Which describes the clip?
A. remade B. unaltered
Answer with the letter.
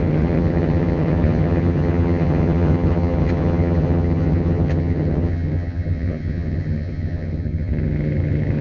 A